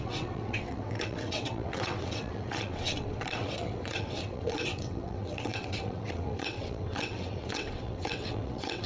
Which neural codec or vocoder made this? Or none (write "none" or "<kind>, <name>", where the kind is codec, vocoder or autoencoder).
vocoder, WaveNeXt